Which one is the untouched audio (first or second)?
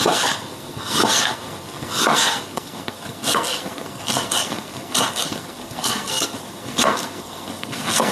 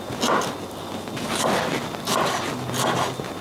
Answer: second